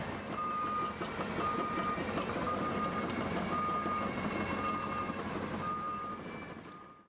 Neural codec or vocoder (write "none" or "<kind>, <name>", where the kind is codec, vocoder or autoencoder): none